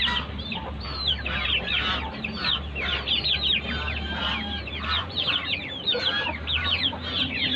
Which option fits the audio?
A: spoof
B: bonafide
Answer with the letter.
A